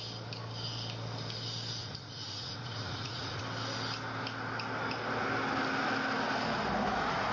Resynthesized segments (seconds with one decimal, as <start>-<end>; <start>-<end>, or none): 1.8-3.4